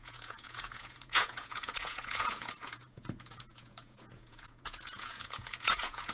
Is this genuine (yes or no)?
no